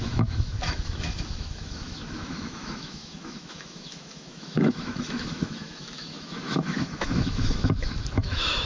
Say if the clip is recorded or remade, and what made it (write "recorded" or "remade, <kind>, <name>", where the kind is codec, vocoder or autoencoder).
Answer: remade, autoencoder, DAC-VAE